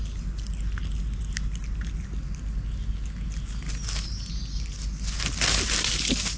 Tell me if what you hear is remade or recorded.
recorded